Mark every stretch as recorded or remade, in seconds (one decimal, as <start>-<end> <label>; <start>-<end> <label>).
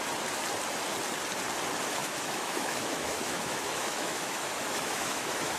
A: 0.0-2.0 recorded; 2.0-5.6 remade